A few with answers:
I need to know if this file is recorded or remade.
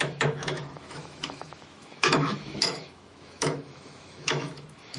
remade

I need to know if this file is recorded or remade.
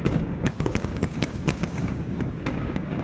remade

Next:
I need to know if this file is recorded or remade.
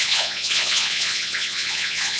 remade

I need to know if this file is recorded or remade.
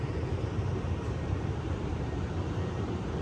remade